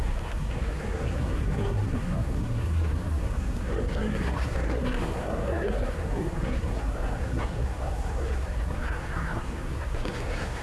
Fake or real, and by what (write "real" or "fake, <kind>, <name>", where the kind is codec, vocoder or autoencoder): fake, codec, SNAC